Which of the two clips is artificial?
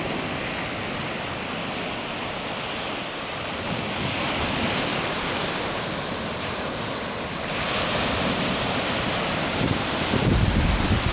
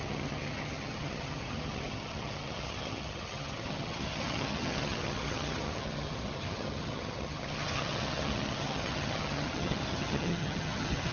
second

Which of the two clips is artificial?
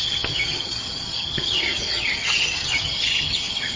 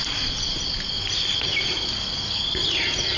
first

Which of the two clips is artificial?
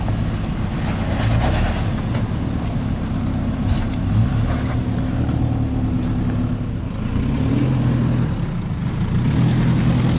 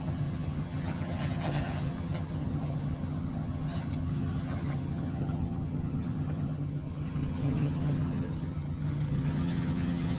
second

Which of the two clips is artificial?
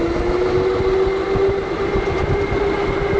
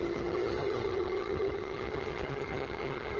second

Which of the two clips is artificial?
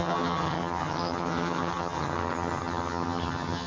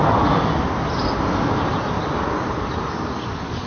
first